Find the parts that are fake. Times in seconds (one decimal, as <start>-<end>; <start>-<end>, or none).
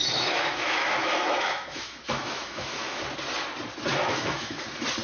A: 0.0-3.0; 3.9-4.6